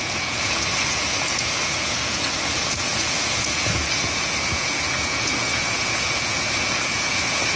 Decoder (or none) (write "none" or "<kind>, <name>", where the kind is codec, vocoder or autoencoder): vocoder, Vocos